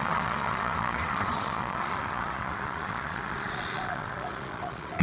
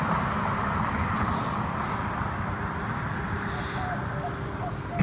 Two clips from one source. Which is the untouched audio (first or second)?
second